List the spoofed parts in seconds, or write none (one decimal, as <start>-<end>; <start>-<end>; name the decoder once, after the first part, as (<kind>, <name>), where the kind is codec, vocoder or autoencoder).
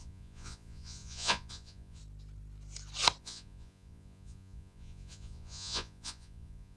0.0-2.0 (vocoder, Vocos); 3.2-6.8